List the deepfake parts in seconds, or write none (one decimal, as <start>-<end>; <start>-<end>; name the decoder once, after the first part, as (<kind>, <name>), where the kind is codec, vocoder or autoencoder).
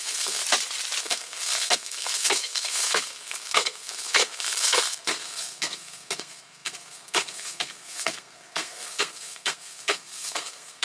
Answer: 0.0-0.4 (codec, SNAC); 1.0-10.8